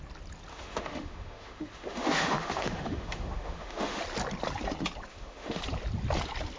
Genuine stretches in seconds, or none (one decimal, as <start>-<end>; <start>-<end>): 0.0-0.5; 4.0-5.1; 5.6-6.6